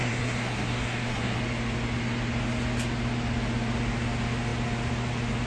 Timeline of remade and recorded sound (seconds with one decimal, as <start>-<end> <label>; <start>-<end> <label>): 0.0-1.4 remade; 1.4-5.5 recorded